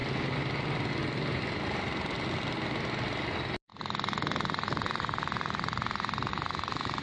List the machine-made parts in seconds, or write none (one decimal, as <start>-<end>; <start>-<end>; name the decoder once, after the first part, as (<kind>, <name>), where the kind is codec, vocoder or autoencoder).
none